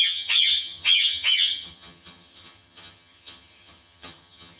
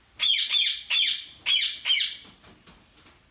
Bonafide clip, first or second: second